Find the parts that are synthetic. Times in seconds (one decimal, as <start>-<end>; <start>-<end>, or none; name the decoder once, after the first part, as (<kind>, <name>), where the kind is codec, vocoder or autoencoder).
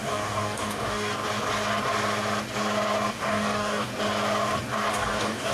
0.0-1.2 (codec, DAC); 3.1-3.9; 4.9-5.5